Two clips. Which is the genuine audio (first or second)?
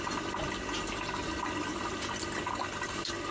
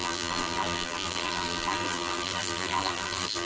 first